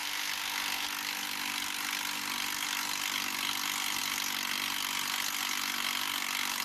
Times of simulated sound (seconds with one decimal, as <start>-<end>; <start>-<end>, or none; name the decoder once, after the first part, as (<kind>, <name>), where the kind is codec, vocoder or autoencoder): none